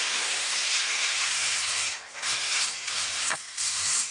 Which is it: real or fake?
fake